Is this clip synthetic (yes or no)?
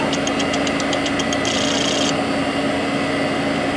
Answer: no